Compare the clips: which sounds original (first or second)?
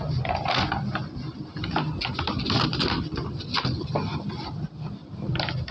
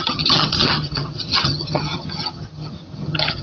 first